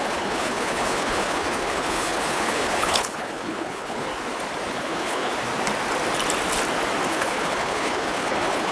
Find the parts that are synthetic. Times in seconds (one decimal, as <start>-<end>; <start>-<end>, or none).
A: 0.0-4.1; 4.7-5.3; 7.1-8.7